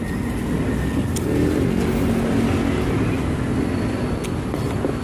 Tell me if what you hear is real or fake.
real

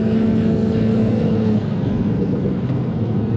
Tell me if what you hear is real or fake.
fake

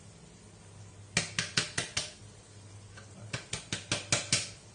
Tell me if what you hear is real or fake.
real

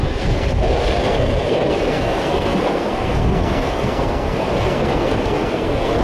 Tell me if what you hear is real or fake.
fake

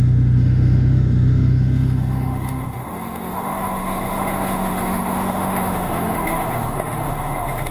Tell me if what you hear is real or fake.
fake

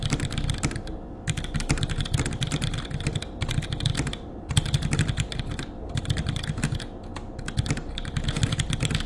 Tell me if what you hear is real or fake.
real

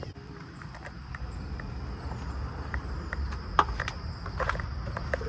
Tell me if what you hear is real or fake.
fake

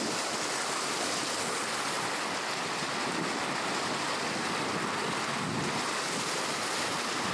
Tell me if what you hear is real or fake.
real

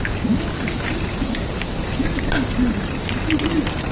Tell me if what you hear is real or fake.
real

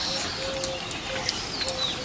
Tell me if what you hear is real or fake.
real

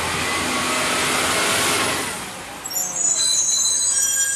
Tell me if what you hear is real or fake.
real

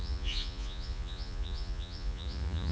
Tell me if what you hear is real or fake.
fake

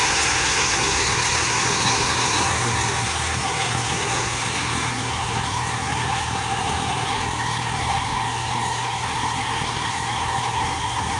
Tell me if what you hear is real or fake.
fake